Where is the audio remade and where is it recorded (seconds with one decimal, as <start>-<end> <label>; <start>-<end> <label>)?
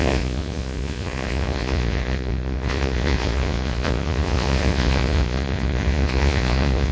0.0-6.9 remade